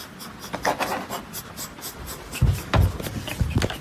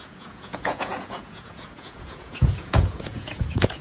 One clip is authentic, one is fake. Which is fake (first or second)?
second